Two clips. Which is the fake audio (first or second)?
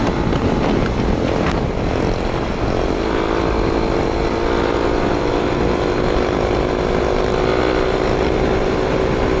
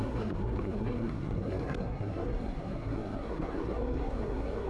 second